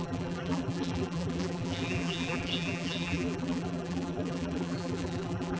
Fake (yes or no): yes